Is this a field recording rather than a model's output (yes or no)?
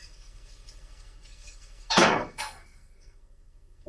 no